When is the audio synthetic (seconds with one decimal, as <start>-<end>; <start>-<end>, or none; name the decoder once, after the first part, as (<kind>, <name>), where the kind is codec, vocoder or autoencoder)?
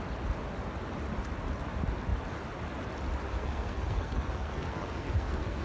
3.3-5.6 (codec, SNAC)